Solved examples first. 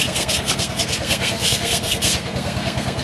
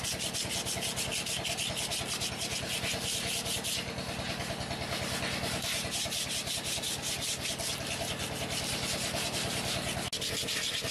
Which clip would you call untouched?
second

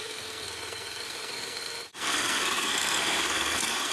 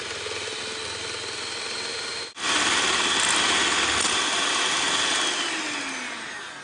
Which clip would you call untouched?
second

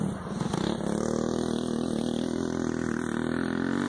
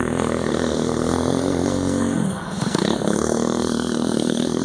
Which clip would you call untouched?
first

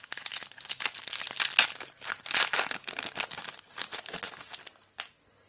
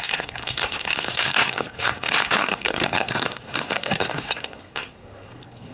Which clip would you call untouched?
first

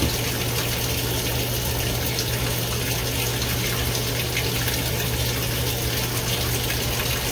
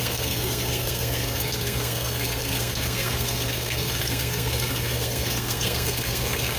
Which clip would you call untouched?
first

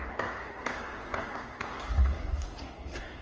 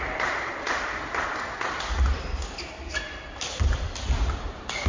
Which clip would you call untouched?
second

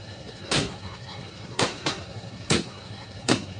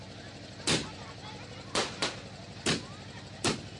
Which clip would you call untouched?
second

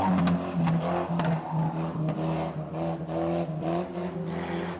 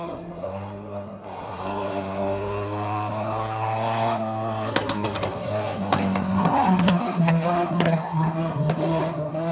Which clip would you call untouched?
first